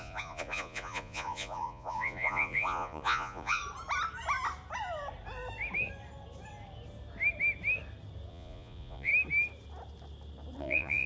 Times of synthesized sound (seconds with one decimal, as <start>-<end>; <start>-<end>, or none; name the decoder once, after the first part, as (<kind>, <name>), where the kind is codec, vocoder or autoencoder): 0.0-3.6 (vocoder, Vocos); 8.3-9.1; 10.6-11.1